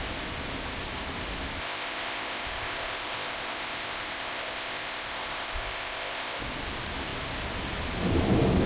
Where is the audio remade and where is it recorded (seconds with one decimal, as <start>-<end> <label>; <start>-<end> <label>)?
0.0-1.6 recorded; 1.6-6.4 remade; 6.4-8.7 recorded

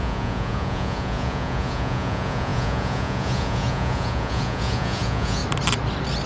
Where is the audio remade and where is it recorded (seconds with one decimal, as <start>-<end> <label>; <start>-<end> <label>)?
0.0-5.4 remade; 5.4-6.3 recorded

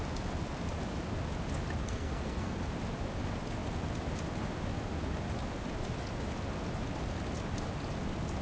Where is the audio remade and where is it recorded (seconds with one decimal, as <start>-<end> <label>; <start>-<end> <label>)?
0.0-1.8 recorded; 1.8-2.6 remade; 2.6-8.4 recorded

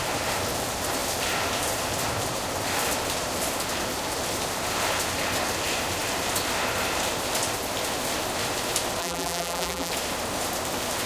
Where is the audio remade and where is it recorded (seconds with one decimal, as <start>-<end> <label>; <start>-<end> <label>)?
0.0-9.0 recorded; 9.0-9.9 remade; 9.9-11.1 recorded

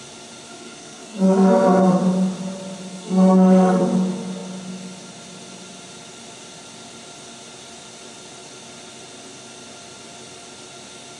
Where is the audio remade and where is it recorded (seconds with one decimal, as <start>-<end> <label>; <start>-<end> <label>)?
0.0-0.5 recorded; 0.5-2.0 remade; 2.0-2.9 recorded; 2.9-3.8 remade; 3.8-11.2 recorded

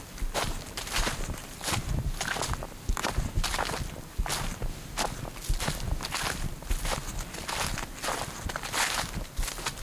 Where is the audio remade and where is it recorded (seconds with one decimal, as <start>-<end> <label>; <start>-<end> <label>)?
0.0-9.8 recorded

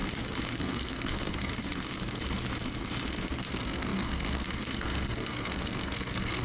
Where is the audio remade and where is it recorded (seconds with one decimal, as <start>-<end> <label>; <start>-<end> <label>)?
0.0-0.6 recorded; 0.6-1.5 remade; 1.5-3.5 recorded; 3.5-6.4 remade

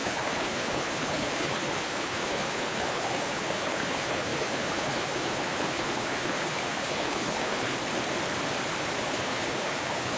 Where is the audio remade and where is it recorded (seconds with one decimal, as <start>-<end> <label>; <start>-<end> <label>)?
0.0-7.7 remade; 7.7-9.0 recorded; 9.0-10.2 remade